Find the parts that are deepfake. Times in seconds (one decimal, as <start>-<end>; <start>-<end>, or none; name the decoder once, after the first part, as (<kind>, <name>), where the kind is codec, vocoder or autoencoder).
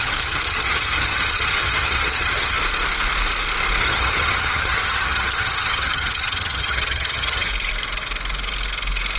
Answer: 0.0-2.6 (vocoder, HiFi-GAN); 3.8-7.5